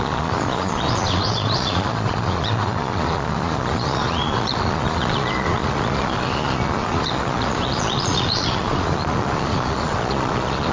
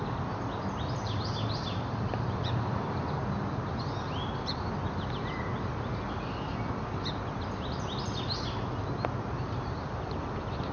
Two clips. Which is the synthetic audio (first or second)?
first